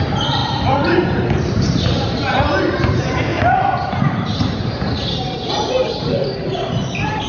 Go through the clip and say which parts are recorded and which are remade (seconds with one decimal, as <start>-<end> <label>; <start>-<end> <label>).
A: 0.0-5.8 remade; 5.8-7.3 recorded